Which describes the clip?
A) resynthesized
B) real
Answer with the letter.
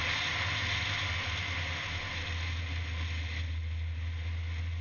B